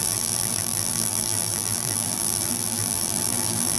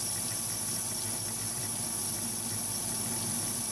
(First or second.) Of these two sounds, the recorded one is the second